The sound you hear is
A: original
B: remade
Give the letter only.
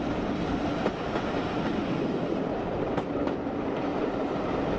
A